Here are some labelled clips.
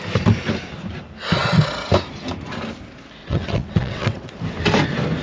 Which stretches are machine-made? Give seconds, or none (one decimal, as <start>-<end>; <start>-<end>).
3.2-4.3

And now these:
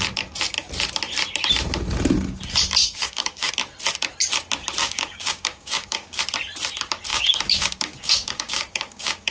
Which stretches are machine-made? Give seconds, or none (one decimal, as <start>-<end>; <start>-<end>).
2.8-3.5; 4.8-6.2; 7.1-9.3

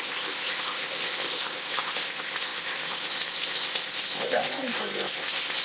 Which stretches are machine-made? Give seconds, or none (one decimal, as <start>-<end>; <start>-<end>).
0.0-5.6

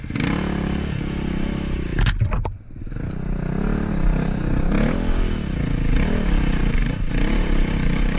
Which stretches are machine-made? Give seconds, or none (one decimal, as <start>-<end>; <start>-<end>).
none

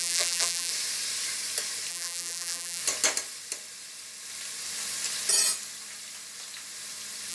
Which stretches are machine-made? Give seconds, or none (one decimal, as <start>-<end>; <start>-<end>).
0.0-0.7; 1.9-2.8

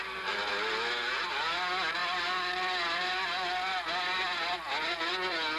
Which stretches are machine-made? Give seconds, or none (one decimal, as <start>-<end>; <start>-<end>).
none

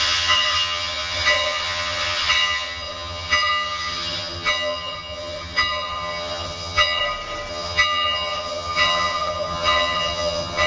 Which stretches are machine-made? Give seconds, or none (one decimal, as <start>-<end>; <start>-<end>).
0.0-7.0; 7.5-10.7